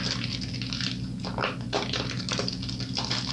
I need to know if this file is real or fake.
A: real